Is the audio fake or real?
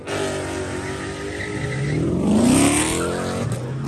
real